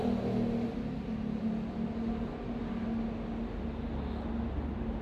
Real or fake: real